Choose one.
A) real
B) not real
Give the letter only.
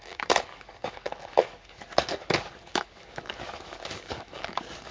B